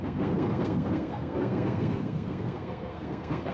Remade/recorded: remade